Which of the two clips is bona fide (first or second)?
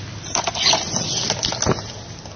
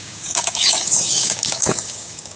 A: first